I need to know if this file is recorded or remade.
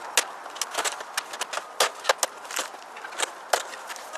recorded